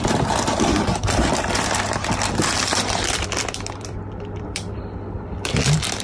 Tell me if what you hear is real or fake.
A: fake